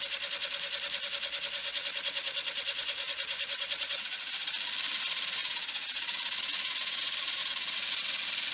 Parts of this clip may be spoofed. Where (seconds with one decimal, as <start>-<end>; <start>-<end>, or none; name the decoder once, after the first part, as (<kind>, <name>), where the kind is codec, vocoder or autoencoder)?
1.6-4.3 (vocoder, WaveNeXt); 5.4-7.0; 7.4-8.0